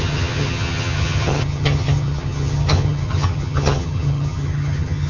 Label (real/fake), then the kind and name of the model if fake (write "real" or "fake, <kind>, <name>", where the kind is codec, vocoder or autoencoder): fake, vocoder, HiFi-GAN